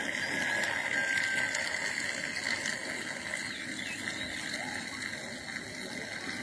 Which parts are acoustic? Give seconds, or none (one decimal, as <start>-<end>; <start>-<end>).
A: 0.0-6.4